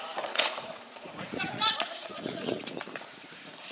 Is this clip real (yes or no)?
no